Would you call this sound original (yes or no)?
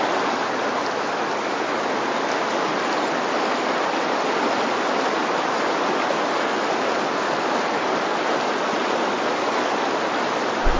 yes